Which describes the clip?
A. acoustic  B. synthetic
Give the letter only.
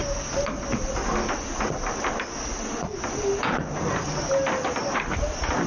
A